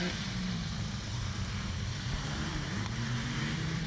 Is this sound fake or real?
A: fake